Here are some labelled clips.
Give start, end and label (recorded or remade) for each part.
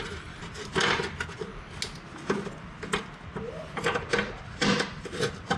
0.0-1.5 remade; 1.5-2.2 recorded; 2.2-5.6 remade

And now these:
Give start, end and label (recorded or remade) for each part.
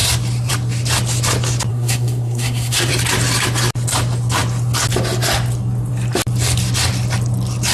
0.0-1.7 recorded; 1.7-2.9 remade; 2.9-7.7 recorded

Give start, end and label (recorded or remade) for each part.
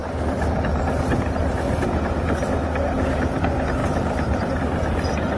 0.0-3.8 recorded; 3.8-4.6 remade; 4.6-5.4 recorded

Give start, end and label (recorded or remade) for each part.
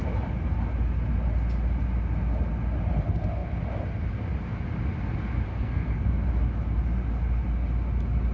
0.0-5.5 recorded; 5.5-6.2 remade; 6.2-8.3 recorded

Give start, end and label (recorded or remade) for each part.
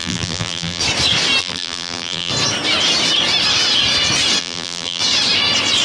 0.0-0.8 remade; 0.8-1.4 recorded; 1.4-2.3 remade; 2.3-4.4 recorded; 4.4-5.0 remade; 5.0-5.8 recorded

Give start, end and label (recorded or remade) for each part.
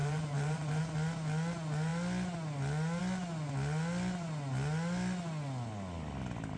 0.0-0.8 remade; 0.8-6.6 recorded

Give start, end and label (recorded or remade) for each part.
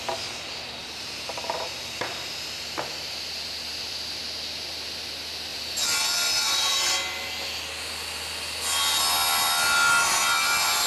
0.0-0.8 recorded; 0.8-4.2 remade; 4.2-5.5 recorded; 5.5-6.9 remade; 6.9-10.9 recorded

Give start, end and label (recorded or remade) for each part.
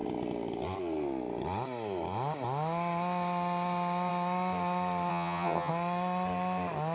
0.0-5.1 recorded; 5.1-5.7 remade; 5.7-6.9 recorded